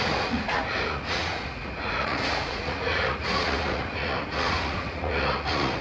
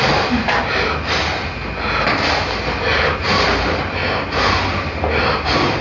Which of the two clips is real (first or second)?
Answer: second